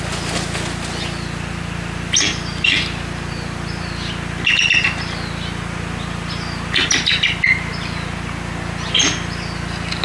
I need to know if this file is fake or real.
real